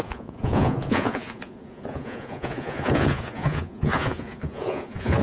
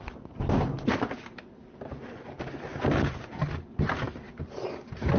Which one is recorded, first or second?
second